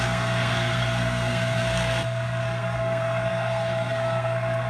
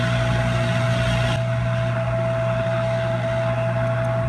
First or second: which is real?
second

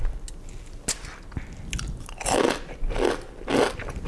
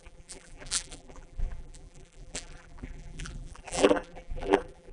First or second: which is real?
first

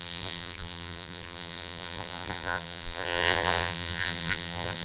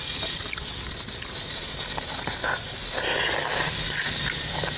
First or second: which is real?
second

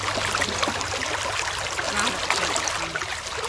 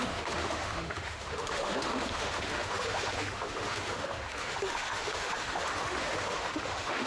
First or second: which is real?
first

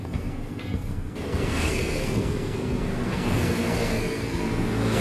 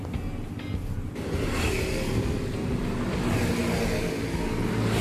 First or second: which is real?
second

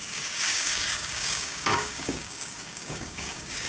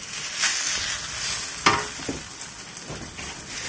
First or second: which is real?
second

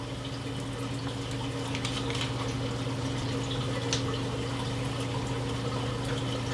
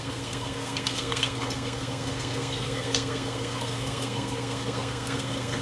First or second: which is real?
first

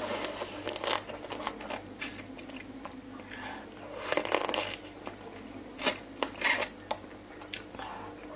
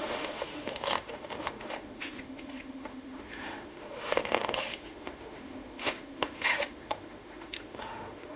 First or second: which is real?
first